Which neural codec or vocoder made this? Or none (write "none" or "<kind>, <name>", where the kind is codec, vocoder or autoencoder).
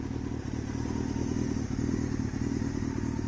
none